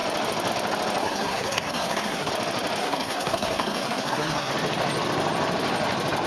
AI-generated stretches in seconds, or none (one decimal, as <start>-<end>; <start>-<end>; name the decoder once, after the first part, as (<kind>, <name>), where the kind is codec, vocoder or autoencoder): 1.0-2.3 (codec, SNAC); 2.8-4.5